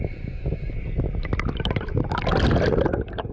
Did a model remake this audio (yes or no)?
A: no